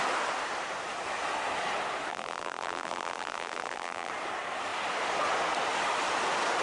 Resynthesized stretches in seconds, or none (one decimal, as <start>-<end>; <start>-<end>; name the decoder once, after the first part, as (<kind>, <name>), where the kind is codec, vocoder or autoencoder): 2.1-4.1 (vocoder, BigVGAN v2)